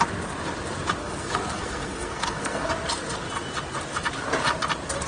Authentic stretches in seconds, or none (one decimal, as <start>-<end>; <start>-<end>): 0.0-1.0; 2.7-5.1